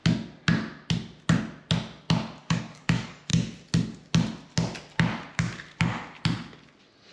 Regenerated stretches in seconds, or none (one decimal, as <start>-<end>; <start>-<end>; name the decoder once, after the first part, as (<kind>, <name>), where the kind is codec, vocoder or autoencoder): 2.4-3.3 (codec, DAC)